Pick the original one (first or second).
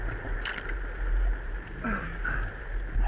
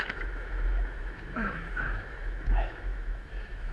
first